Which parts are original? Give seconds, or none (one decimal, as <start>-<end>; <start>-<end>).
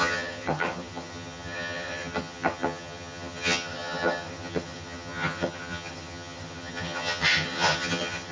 none